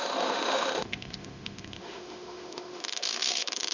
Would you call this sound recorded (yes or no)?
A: no